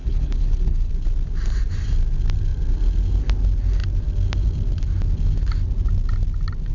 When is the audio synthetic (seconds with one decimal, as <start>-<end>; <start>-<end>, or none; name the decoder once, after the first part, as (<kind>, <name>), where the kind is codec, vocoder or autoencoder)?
0.0-0.9 (codec, HILCodec)

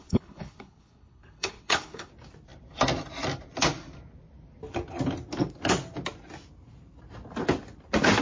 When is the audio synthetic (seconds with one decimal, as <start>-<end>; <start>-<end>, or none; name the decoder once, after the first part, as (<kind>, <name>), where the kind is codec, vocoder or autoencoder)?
0.0-2.1 (codec, HILCodec)